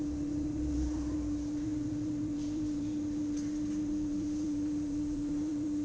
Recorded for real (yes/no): no